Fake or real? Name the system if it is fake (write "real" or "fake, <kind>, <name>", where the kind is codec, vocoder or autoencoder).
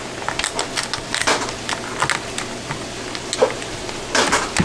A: real